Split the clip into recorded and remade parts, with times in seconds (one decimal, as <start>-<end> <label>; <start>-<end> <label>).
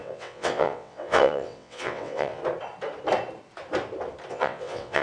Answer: 0.0-2.4 remade; 2.4-4.3 recorded; 4.3-5.0 remade